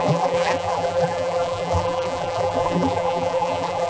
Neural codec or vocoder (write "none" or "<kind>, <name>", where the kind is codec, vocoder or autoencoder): vocoder, BigVGAN v2